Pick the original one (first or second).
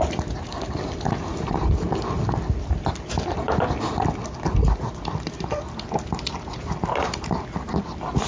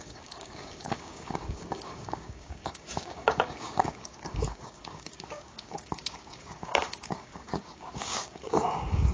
first